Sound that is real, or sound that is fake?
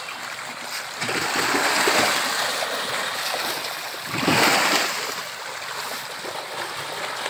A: fake